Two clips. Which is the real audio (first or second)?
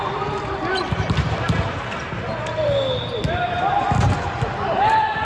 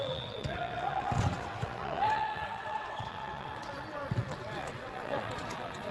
first